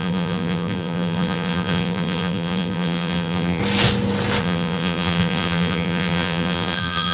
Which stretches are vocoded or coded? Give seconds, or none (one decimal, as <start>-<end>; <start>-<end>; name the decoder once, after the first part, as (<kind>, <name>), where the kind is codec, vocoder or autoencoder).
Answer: 0.0-3.6 (vocoder, BigVGAN v2); 4.4-7.1